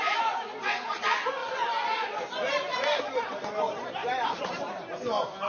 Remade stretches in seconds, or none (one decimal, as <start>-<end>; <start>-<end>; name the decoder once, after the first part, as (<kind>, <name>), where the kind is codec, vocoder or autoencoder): none